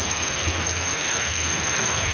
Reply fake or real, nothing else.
fake